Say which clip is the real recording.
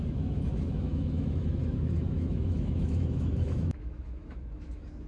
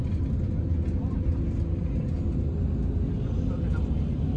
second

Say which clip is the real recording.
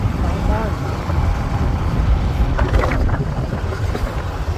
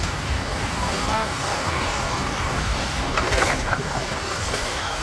first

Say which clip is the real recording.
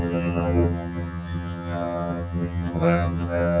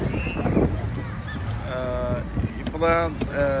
second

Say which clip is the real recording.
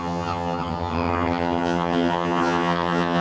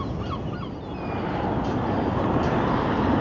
second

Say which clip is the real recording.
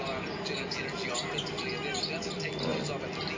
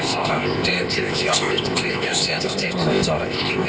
first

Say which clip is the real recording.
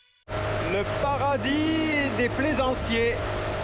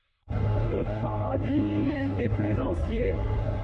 first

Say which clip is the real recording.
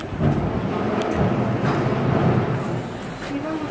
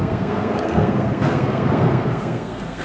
first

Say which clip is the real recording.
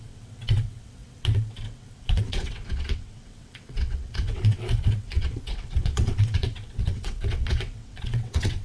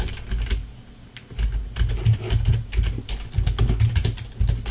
second